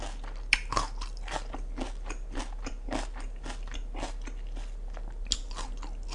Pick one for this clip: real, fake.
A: real